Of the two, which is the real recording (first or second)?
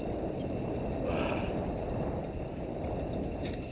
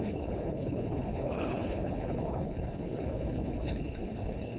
first